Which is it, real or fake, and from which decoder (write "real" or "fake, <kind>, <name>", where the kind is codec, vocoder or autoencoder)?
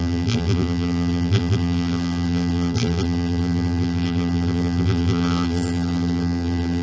fake, vocoder, BigVGAN v2